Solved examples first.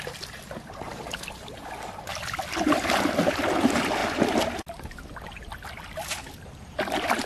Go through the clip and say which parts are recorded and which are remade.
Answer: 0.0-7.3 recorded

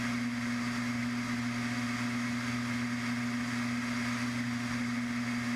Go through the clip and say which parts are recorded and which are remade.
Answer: 0.0-5.6 recorded